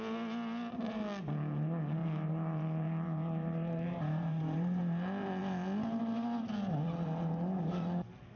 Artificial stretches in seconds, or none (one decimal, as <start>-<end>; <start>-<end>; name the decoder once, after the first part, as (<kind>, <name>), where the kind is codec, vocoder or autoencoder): 2.0-4.8 (vocoder, BigVGAN v2)

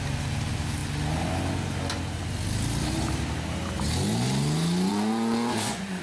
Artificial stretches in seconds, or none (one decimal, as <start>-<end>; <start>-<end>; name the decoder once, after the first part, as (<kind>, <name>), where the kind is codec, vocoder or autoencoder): 4.9-6.0 (vocoder, Vocos)

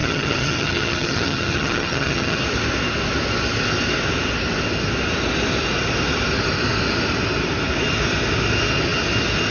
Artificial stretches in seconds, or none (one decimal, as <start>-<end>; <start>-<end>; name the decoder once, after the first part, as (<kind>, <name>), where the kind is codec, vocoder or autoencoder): 0.0-2.4 (vocoder, HiFi-GAN)

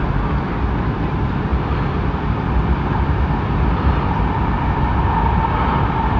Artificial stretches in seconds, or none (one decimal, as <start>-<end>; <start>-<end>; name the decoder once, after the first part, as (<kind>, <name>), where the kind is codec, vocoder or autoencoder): none

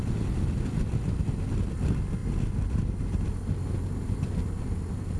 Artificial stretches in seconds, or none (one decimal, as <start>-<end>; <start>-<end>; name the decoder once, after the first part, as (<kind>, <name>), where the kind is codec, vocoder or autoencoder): none

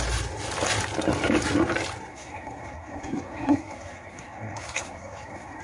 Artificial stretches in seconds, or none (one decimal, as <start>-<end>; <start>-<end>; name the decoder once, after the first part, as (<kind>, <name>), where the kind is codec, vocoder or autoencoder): 2.1-5.6 (codec, SNAC)

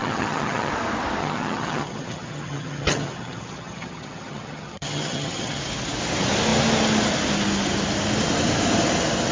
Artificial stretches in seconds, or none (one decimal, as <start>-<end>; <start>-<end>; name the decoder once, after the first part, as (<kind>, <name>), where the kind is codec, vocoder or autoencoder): 0.0-0.7 (vocoder, HiFi-GAN); 1.2-5.6